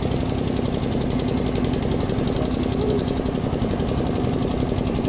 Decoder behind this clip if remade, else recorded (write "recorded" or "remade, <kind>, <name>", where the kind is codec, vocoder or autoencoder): recorded